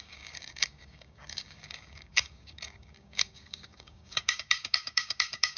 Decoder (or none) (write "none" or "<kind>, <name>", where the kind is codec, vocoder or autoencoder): codec, DAC